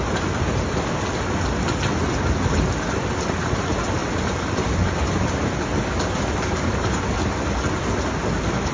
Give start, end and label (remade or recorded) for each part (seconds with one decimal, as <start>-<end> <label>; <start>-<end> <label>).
0.0-4.0 recorded; 4.0-5.8 remade; 5.8-8.7 recorded